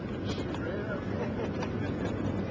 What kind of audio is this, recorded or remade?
recorded